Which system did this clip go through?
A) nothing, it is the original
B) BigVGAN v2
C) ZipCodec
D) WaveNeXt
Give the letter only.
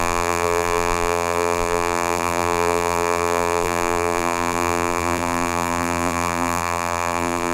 B